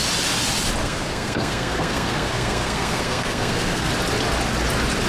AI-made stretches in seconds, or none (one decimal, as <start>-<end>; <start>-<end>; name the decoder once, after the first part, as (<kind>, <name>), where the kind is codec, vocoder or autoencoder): 0.8-3.9 (codec, SNAC)